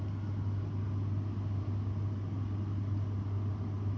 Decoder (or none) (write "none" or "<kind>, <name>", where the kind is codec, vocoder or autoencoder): none